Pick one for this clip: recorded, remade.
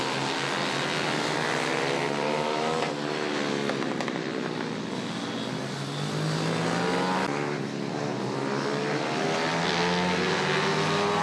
recorded